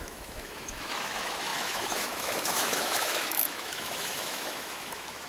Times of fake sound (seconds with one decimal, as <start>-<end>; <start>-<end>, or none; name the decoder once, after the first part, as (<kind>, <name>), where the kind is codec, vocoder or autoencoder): 0.0-5.3 (autoencoder, DAC-VAE)

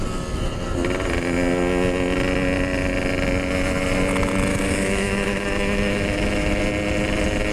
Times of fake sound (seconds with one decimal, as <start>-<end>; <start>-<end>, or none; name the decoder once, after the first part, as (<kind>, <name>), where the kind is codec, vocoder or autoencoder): 4.5-6.6 (autoencoder, DAC-VAE)

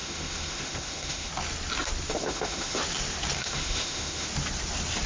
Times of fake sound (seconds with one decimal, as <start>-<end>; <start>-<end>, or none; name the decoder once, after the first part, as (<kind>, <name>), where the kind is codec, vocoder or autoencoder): 0.0-1.3 (autoencoder, DAC-VAE); 2.1-2.8; 3.4-4.3